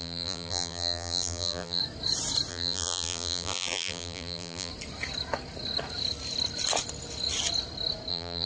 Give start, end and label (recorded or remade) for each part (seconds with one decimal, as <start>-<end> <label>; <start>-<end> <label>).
0.0-1.8 remade; 1.8-2.5 recorded; 2.5-4.7 remade; 4.7-8.1 recorded; 8.1-8.5 remade